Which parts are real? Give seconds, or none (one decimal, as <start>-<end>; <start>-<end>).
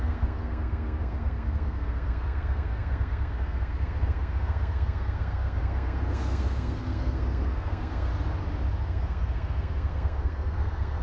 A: 8.1-8.8